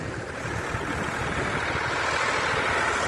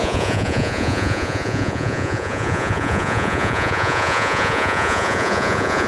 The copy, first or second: second